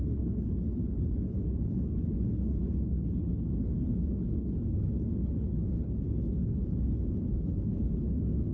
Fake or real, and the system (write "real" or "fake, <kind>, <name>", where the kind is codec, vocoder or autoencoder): fake, codec, HILCodec